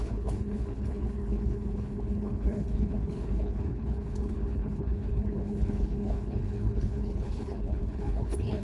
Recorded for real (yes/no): no